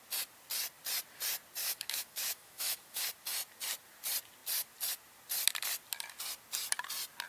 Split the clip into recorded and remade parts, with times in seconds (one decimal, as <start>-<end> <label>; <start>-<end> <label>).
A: 0.0-1.6 recorded; 1.6-3.0 remade; 3.0-7.3 recorded